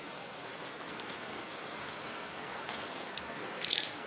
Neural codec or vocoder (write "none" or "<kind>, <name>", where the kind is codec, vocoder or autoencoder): codec, SNAC